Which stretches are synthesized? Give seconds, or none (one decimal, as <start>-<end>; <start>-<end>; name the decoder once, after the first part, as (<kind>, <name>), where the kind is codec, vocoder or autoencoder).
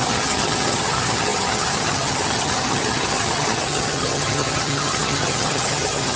0.0-6.2 (vocoder, HiFi-GAN)